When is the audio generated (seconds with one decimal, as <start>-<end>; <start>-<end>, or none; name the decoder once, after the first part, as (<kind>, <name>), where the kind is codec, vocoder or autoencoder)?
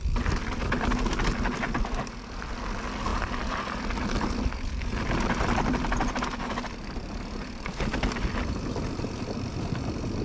none